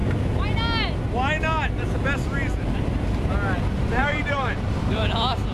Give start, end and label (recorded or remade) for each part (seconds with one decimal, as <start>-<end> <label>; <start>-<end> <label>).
0.0-4.0 recorded; 4.0-5.0 remade; 5.0-5.5 recorded